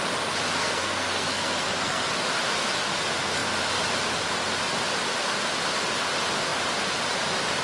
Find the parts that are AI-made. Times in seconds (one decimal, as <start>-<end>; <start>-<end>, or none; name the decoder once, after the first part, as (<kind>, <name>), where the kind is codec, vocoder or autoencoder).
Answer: 0.6-2.1 (codec, SNAC)